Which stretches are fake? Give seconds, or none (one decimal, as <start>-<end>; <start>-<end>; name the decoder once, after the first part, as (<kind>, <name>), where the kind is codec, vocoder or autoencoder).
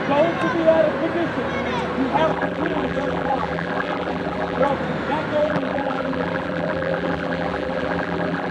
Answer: 2.3-4.7 (vocoder, BigVGAN v2); 5.4-8.5